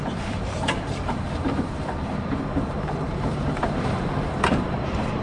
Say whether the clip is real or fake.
fake